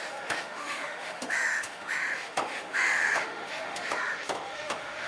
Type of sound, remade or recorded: remade